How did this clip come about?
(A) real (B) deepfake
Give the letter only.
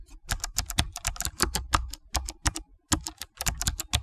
A